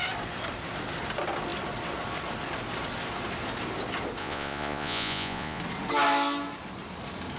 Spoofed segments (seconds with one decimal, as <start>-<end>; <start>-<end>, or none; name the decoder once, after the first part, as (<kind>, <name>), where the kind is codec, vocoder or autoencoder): 4.2-5.6 (vocoder, Vocos)